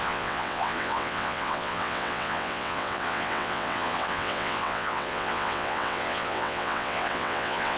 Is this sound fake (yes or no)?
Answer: yes